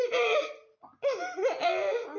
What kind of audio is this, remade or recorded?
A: recorded